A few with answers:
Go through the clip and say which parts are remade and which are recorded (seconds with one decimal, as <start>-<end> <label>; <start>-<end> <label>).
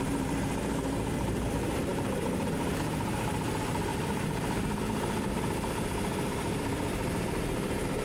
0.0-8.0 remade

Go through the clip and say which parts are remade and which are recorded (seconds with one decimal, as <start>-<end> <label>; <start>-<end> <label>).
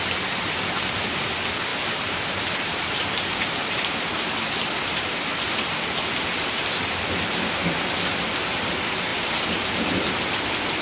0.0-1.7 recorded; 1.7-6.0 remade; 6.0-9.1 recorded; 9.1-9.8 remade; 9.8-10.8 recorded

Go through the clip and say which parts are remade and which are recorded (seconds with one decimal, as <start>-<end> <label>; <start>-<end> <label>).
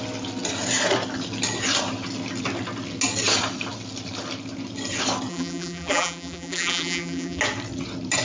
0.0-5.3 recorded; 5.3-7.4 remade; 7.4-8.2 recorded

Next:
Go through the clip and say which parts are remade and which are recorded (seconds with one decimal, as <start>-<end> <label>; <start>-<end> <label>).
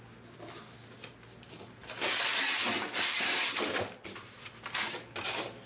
0.0-1.8 recorded; 1.8-5.2 remade; 5.2-5.7 recorded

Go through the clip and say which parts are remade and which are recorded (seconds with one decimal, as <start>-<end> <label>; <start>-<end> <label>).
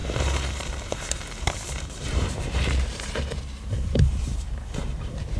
0.0-5.4 remade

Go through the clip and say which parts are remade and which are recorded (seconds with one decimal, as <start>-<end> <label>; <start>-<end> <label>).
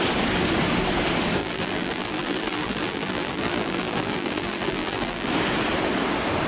0.0-1.4 recorded; 1.4-5.3 remade; 5.3-6.5 recorded